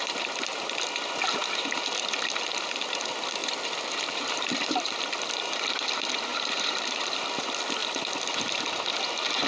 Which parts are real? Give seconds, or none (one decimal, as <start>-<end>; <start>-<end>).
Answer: 0.0-3.4; 4.9-6.3; 7.2-9.5